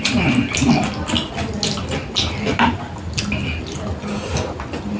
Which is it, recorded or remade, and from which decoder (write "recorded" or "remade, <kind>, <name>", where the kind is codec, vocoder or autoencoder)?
recorded